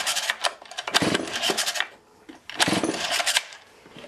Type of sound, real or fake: real